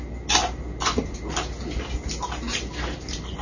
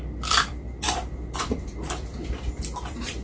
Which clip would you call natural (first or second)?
first